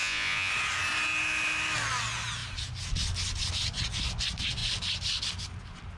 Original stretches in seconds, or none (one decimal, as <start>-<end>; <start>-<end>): 0.5-6.0